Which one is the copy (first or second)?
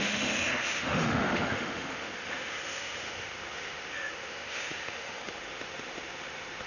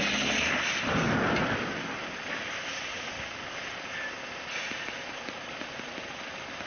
first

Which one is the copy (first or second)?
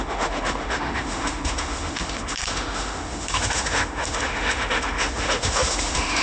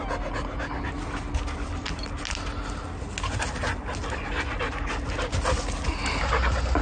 first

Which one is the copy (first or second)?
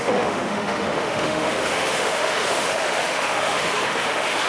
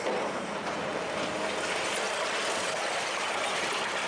first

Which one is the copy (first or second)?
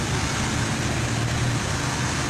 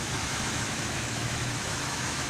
second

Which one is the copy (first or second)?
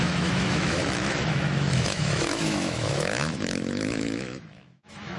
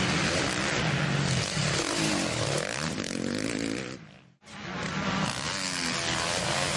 first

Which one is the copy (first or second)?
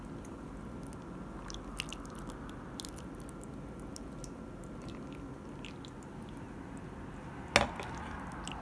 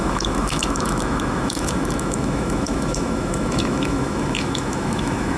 second